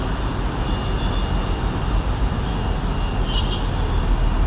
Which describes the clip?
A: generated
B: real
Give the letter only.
B